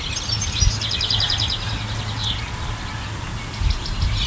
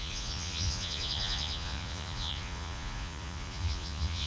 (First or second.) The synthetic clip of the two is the second